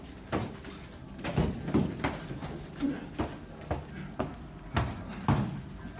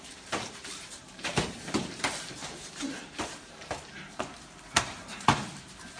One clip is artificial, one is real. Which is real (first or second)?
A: first